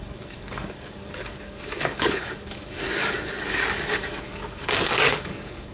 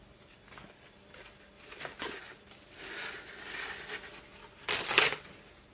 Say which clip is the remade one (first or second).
first